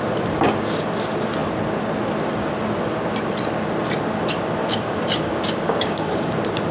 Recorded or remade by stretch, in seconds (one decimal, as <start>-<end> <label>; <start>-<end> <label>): 0.0-4.6 recorded; 4.6-6.3 remade; 6.3-6.7 recorded